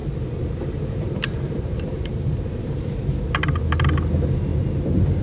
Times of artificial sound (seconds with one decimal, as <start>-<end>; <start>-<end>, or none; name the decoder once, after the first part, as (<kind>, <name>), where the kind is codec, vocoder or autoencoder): 0.0-3.1 (vocoder, BigVGAN v2)